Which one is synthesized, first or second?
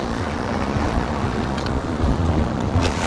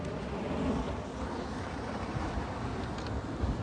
first